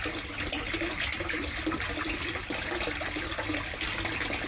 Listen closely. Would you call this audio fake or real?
fake